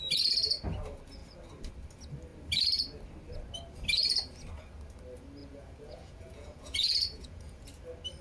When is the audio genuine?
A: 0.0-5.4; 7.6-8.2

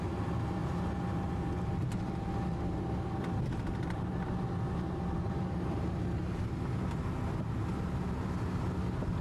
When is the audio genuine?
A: 0.0-9.2

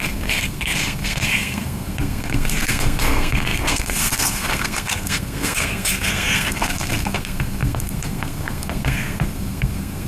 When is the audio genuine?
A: none

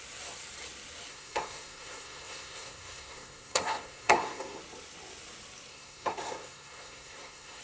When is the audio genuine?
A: 0.0-1.1; 4.6-5.7